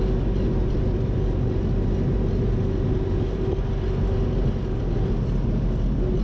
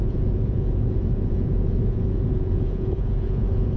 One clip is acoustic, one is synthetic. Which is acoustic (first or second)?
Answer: first